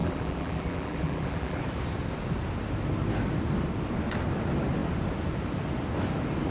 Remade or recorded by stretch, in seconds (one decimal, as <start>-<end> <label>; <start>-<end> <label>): 0.0-1.6 remade; 1.6-6.5 recorded